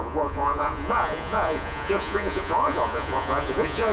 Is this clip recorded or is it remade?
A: remade